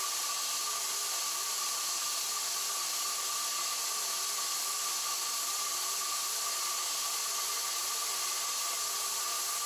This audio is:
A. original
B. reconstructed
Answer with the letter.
A